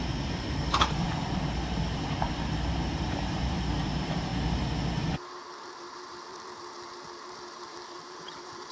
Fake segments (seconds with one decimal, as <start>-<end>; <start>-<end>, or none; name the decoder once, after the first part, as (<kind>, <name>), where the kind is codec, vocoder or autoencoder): 0.0-4.3 (vocoder, BigVGAN v2); 5.3-8.7